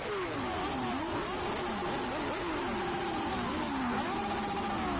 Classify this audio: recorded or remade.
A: recorded